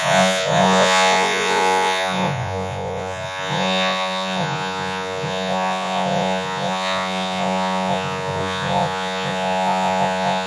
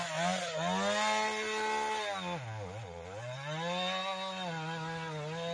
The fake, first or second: first